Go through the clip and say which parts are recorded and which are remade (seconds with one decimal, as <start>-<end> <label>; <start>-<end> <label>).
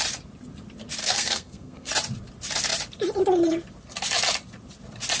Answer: 0.0-1.0 recorded; 1.0-1.9 remade; 1.9-5.2 recorded